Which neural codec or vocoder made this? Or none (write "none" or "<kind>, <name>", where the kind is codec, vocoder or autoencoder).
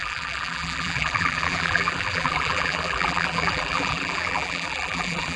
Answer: vocoder, BigVGAN v2